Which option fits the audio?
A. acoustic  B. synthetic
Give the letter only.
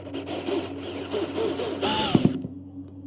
A